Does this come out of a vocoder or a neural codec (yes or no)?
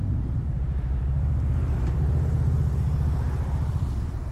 yes